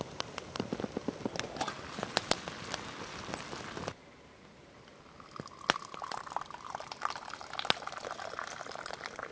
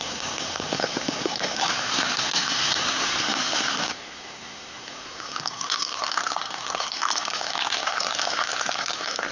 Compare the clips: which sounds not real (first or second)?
second